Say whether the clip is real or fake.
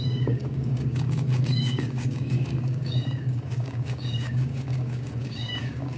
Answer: fake